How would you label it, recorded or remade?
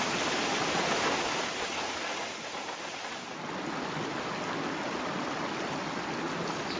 recorded